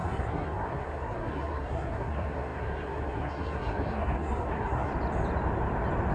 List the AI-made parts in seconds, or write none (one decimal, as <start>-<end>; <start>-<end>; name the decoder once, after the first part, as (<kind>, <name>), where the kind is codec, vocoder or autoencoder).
0.0-4.9 (codec, SNAC)